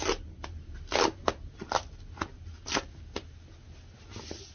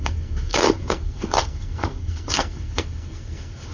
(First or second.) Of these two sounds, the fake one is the second